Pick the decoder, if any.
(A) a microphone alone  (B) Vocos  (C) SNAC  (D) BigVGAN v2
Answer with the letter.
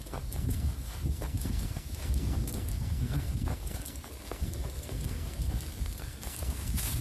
C